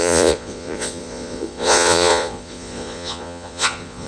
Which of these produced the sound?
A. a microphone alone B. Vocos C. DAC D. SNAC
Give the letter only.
B